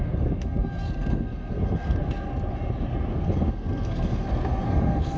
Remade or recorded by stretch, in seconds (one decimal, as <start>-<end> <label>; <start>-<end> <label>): 0.0-2.3 remade; 2.3-3.1 recorded; 3.1-5.2 remade